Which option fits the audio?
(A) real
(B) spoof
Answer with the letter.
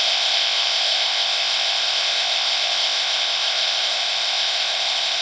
B